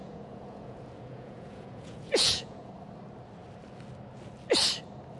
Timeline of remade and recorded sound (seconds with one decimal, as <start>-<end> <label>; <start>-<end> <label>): 0.0-2.7 remade; 2.7-5.2 recorded